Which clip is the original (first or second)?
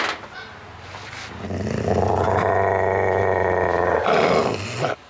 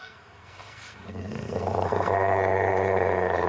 first